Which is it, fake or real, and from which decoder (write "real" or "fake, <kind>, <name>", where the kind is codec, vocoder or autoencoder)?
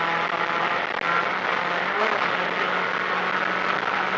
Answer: real